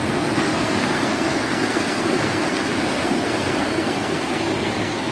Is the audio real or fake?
fake